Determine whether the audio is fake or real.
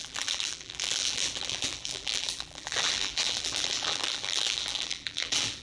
fake